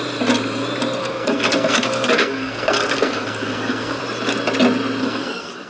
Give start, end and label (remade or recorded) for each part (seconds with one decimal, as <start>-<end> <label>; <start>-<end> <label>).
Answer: 0.0-1.0 recorded; 1.0-4.0 remade; 4.0-5.0 recorded; 5.0-5.7 remade